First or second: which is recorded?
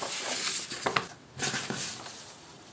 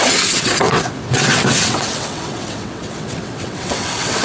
first